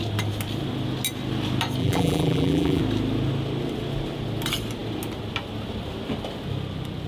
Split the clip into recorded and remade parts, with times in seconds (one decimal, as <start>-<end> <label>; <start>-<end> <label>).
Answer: 0.0-1.8 recorded; 1.8-2.8 remade; 2.8-7.1 recorded